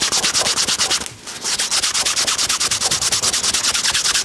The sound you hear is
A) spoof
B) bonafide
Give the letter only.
B